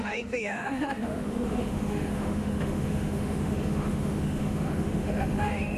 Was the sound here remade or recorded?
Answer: remade